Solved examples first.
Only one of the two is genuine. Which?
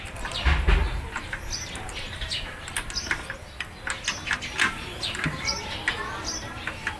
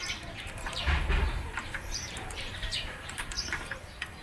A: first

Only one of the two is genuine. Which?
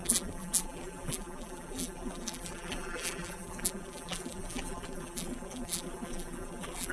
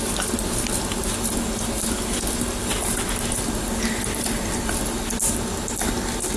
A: second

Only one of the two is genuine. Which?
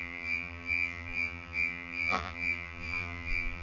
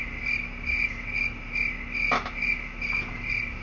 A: second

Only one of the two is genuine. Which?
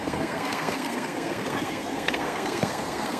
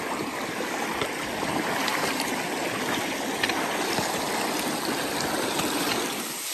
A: second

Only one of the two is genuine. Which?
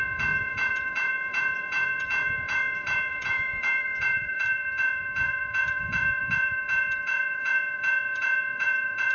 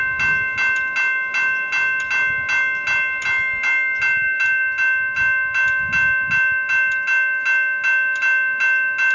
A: second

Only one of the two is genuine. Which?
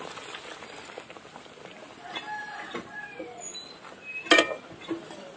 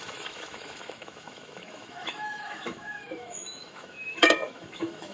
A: first